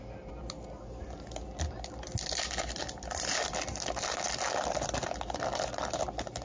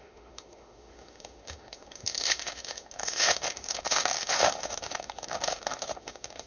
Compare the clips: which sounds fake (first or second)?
second